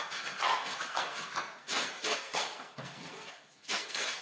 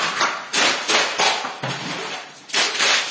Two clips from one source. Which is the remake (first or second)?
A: first